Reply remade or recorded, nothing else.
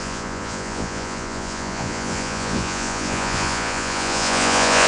remade